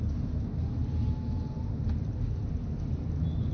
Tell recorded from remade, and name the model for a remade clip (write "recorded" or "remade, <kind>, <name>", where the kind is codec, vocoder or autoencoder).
recorded